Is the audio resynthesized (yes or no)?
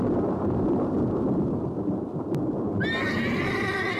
no